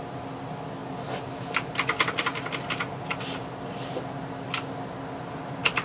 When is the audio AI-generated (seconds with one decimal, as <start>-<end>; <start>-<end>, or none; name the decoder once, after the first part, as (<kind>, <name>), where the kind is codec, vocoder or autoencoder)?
none